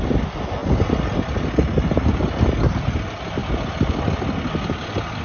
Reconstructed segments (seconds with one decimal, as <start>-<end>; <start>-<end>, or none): none